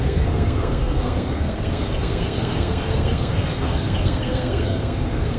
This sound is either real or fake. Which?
fake